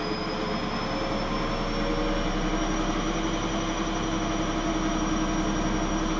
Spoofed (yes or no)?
no